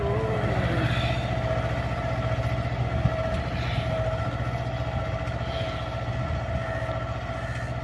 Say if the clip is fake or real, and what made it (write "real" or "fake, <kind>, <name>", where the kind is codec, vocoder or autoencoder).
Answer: real